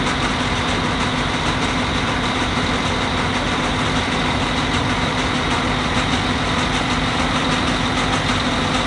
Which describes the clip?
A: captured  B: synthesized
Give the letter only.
A